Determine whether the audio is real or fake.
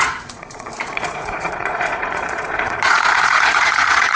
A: fake